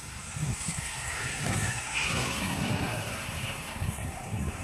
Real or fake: fake